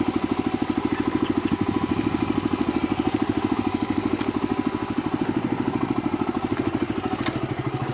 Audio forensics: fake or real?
real